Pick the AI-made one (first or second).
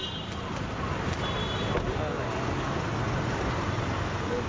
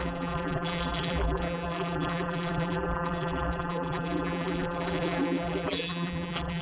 second